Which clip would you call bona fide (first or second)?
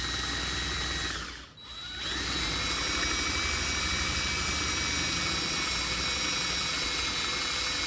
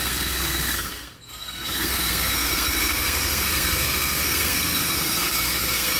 first